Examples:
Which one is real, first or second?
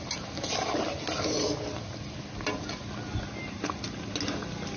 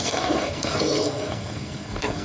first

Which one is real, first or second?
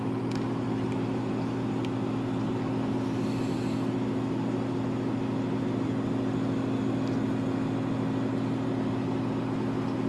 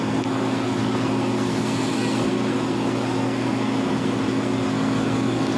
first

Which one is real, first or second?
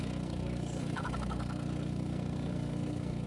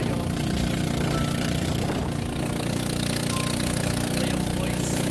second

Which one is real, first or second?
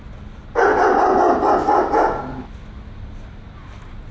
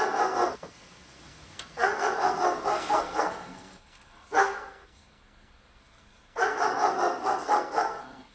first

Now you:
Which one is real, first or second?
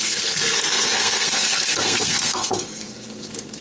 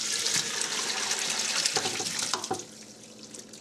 second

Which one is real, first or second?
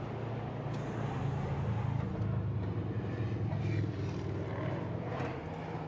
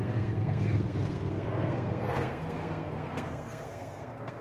first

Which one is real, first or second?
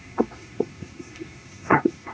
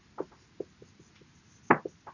second